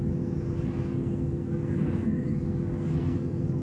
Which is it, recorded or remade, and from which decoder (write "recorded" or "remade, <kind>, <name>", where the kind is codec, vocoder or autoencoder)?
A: remade, codec, SNAC